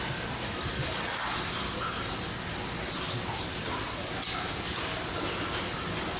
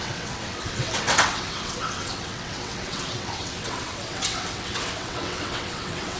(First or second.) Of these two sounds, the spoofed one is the second